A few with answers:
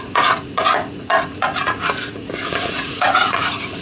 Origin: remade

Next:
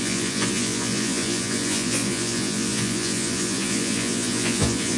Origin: remade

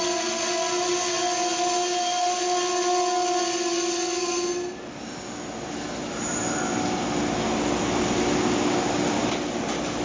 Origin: recorded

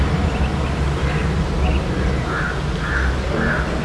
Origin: recorded